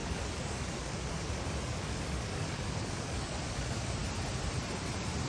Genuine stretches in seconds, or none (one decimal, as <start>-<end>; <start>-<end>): 4.0-5.3